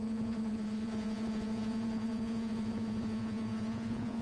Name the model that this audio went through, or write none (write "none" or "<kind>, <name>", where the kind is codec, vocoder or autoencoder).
vocoder, Vocos